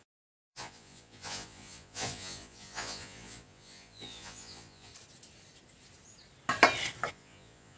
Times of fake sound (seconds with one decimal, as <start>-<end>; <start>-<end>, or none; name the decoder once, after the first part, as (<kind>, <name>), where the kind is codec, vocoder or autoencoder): 0.0-4.9 (vocoder, Vocos); 7.1-7.8